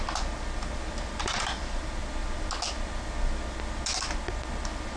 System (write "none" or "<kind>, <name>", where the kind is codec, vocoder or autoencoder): none